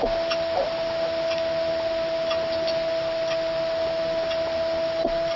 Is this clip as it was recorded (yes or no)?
yes